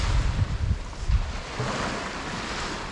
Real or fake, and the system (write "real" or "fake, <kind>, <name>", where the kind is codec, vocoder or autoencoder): real